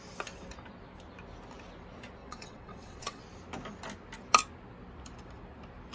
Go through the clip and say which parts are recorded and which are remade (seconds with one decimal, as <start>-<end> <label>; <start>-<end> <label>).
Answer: 0.0-2.2 recorded; 2.2-3.2 remade; 3.2-5.9 recorded